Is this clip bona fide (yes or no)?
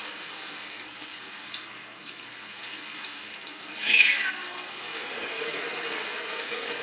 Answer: no